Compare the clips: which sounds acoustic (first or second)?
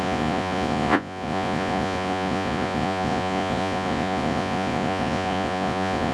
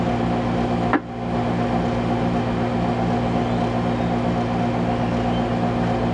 second